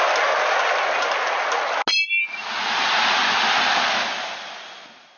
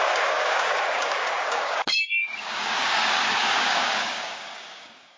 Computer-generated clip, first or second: second